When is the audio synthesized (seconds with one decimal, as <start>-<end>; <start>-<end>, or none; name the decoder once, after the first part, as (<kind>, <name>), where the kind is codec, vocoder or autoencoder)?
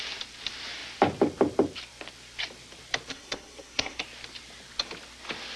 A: 3.1-4.0 (codec, SNAC)